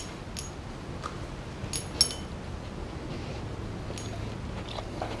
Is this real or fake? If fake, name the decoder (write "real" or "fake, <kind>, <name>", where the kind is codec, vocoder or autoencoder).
real